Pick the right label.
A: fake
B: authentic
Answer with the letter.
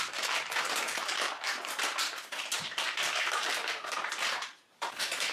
A